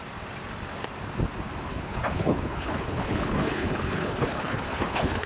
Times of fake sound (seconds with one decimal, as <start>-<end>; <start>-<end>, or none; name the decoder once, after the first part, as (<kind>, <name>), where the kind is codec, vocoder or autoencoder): 1.7-5.3 (codec, HILCodec)